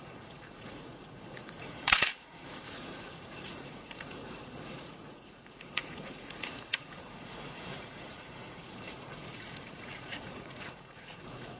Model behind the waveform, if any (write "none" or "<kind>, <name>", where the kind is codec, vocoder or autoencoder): vocoder, Vocos